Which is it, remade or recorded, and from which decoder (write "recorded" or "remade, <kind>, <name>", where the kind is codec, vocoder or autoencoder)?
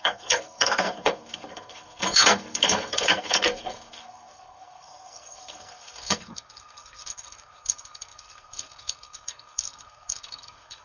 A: remade, codec, SNAC